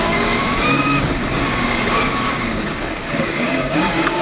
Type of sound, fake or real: fake